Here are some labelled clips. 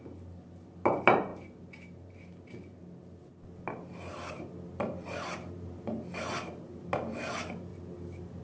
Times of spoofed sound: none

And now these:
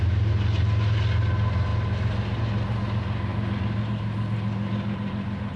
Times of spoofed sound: none

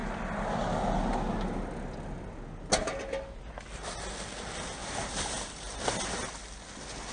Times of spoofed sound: 4.8-5.8 (vocoder, BigVGAN v2)

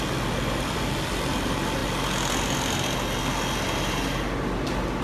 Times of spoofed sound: none

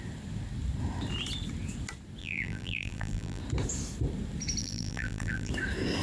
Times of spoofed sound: 2.2-3.4 (vocoder, BigVGAN v2); 4.6-5.5

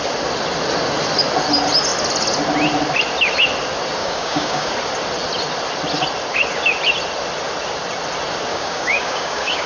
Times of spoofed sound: 4.0-4.7 (codec, DAC); 8.5-9.7